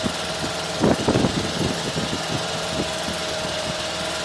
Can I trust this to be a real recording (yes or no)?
yes